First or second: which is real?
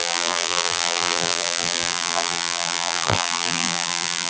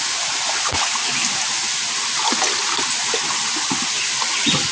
second